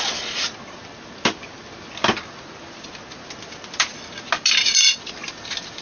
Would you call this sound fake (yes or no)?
no